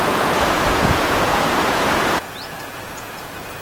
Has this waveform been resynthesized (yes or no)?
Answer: yes